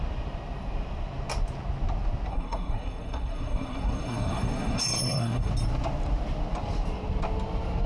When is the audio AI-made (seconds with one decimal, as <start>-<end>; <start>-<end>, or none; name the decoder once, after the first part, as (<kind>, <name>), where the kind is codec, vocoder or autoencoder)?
2.3-5.5 (codec, SNAC)